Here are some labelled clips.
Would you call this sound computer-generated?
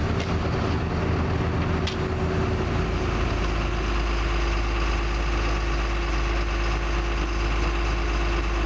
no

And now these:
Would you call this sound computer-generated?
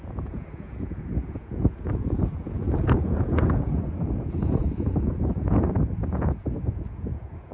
yes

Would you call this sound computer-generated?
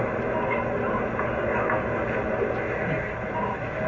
no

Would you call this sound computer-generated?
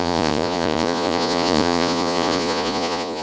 yes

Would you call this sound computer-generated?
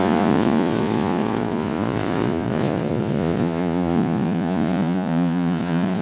yes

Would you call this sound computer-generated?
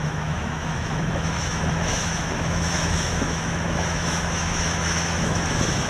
yes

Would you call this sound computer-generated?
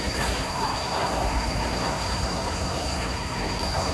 yes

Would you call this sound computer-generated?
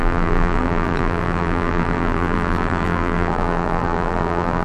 yes